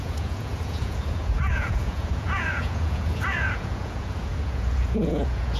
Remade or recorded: remade